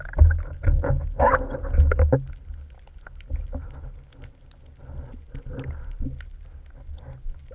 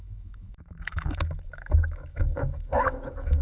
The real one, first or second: first